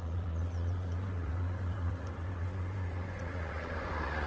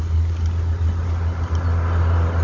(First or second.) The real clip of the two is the second